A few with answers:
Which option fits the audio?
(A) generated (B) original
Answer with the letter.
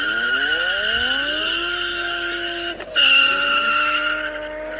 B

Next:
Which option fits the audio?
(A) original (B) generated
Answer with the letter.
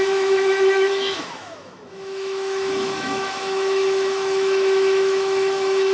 B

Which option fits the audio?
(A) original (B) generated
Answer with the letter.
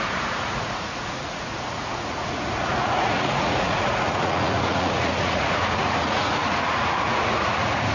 B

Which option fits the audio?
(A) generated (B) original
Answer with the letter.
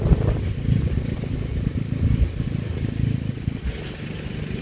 B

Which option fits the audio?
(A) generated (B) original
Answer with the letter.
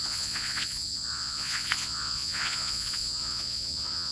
A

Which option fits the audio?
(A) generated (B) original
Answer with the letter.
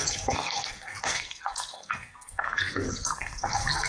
A